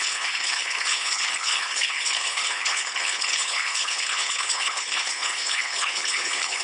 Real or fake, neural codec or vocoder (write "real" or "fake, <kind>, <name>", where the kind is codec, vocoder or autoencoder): fake, codec, HILCodec